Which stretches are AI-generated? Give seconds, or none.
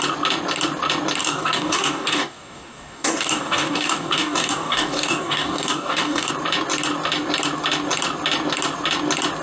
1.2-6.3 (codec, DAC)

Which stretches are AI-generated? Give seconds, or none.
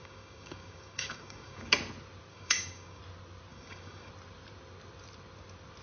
0.0-1.7 (codec, DAC); 2.3-3.0; 3.5-4.1